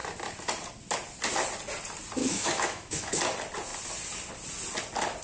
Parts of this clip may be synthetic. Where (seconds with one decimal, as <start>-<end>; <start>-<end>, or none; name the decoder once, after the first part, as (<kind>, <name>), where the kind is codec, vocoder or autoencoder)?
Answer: 2.2-3.2 (autoencoder, DAC-VAE)